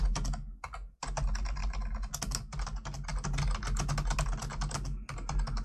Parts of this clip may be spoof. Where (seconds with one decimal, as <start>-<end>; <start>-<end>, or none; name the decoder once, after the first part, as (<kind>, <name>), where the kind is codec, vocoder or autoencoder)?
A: none

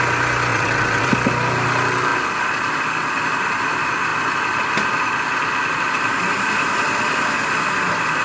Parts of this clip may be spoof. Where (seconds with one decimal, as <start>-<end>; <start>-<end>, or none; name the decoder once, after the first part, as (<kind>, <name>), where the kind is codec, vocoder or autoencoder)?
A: 0.5-1.1 (vocoder, WaveNeXt)

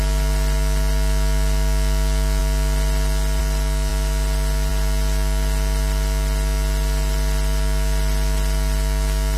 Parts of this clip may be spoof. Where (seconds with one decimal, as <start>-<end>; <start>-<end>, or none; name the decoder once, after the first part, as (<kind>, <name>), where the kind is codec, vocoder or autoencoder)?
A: none

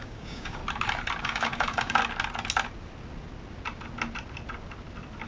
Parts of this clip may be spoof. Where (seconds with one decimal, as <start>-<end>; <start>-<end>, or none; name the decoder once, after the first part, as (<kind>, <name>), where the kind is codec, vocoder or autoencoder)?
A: 0.0-0.6 (codec, DAC); 1.2-2.0

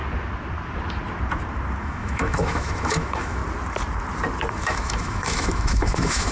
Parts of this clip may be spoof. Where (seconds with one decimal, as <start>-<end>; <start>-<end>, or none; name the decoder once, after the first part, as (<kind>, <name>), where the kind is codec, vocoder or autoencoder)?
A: 1.8-3.4 (autoencoder, DAC-VAE); 4.5-6.3

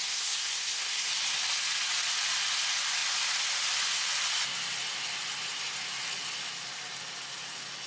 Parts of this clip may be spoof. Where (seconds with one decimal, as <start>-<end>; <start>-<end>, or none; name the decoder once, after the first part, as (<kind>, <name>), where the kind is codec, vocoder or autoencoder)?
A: 0.0-1.1 (codec, SNAC)